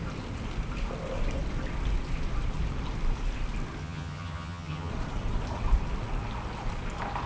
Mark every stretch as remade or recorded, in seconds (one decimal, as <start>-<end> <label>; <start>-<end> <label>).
0.0-3.8 recorded; 3.8-4.9 remade; 4.9-7.3 recorded